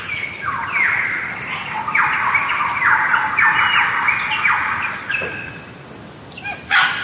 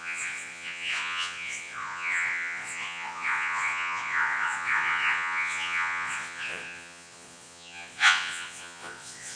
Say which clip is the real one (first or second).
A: first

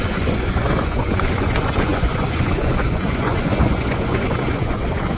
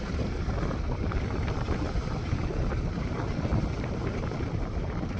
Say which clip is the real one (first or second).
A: second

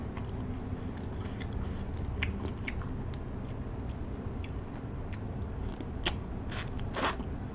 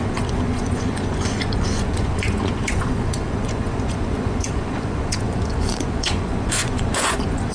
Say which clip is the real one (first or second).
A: first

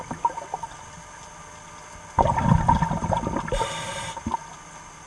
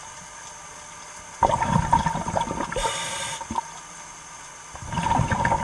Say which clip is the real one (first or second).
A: first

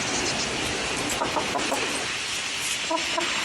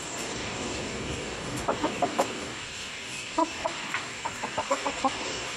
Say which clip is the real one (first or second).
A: first